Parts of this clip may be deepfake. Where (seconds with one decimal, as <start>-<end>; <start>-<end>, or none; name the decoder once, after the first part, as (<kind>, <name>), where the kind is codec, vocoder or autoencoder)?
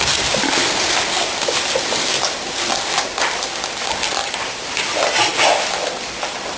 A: 0.0-0.6 (vocoder, BigVGAN v2); 4.5-6.6